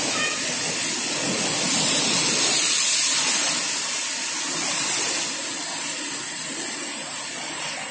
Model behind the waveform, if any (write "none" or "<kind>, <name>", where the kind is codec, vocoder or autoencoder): none